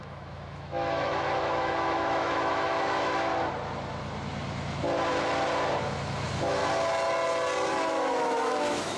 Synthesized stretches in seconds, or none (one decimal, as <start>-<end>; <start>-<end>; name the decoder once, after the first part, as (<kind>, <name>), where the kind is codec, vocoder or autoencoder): 0.0-3.3 (autoencoder, DAC-VAE); 5.8-6.6; 7.7-9.0